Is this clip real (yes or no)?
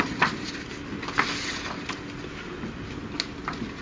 yes